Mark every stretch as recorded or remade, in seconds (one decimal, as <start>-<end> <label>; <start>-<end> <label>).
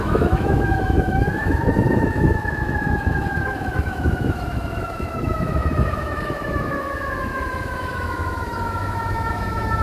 0.0-9.8 remade